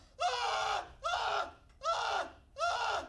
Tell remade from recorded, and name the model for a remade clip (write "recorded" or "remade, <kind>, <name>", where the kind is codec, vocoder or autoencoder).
recorded